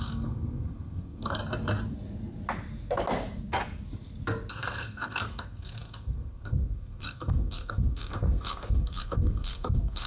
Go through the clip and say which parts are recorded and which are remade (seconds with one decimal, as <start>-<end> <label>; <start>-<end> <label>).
0.0-1.4 remade; 1.4-4.5 recorded; 4.5-10.1 remade